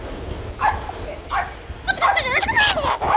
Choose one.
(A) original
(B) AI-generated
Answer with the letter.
A